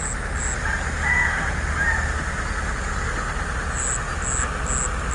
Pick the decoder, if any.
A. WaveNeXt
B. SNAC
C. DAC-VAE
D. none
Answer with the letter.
D